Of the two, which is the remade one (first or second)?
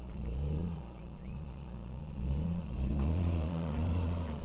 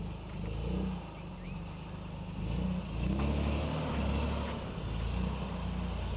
first